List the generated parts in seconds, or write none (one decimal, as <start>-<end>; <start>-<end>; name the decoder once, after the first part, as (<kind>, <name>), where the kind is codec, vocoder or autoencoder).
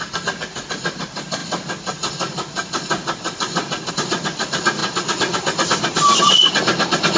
none